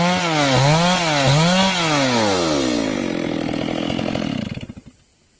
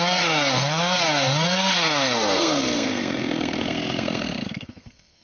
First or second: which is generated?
second